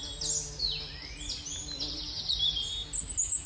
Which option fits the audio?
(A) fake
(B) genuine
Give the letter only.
B